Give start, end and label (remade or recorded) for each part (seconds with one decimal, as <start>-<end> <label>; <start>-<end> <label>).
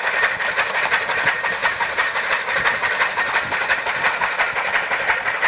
0.0-1.6 recorded; 1.6-2.3 remade; 2.3-5.5 recorded